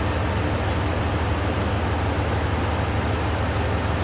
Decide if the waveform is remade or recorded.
recorded